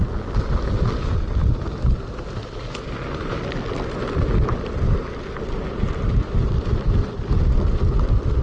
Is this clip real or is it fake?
real